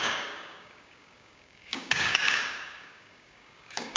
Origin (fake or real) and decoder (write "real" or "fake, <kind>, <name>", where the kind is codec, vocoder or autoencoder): fake, codec, DAC